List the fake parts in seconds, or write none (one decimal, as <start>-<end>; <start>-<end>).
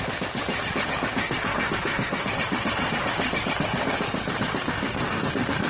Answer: 1.2-2.3; 4.7-5.3